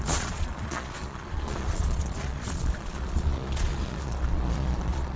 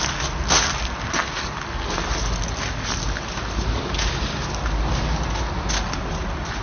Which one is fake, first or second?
first